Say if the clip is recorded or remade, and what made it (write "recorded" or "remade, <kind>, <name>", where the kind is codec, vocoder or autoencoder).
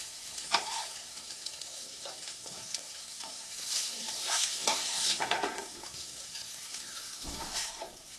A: remade, codec, SNAC